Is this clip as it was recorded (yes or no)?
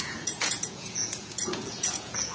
no